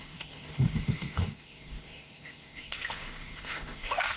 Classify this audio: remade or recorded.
remade